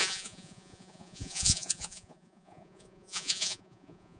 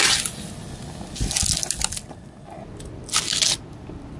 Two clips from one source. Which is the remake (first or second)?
first